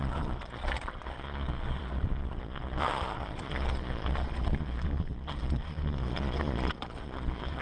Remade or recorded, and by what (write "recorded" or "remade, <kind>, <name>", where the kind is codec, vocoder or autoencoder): remade, vocoder, Vocos